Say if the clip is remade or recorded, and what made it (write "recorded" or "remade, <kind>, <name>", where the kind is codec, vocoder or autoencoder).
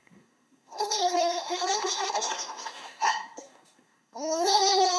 remade, codec, SNAC